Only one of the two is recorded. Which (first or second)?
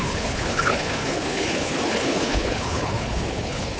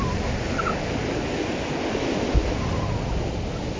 second